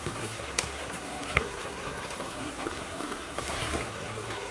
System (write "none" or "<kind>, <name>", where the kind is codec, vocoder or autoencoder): codec, SNAC